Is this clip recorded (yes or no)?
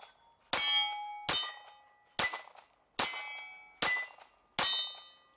yes